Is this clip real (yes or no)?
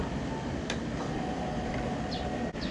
yes